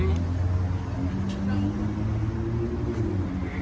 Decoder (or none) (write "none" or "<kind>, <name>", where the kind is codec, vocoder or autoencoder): none